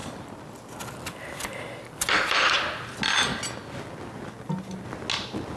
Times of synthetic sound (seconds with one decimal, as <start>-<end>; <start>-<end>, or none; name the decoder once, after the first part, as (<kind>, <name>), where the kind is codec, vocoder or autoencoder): none